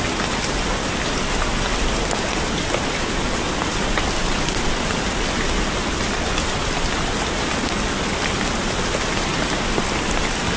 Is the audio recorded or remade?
recorded